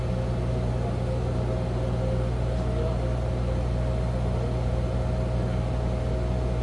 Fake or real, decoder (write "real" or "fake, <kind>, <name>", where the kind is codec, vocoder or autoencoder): real